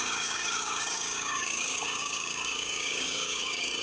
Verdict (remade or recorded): remade